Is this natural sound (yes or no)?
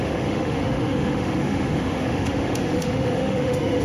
no